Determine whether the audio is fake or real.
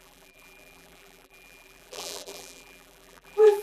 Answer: fake